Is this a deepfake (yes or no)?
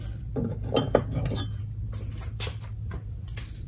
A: no